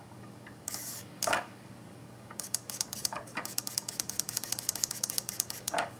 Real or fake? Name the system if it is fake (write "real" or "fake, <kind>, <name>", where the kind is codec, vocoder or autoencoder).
fake, codec, DAC